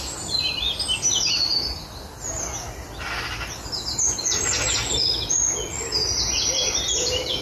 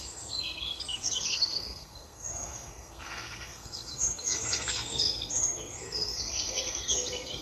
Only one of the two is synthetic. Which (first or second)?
second